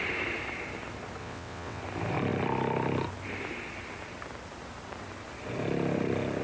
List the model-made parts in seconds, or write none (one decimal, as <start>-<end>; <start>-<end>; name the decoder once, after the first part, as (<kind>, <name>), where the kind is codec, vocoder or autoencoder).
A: 1.2-1.8 (vocoder, WaveNeXt)